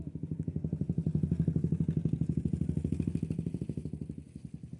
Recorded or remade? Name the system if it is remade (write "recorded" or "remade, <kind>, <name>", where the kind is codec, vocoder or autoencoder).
recorded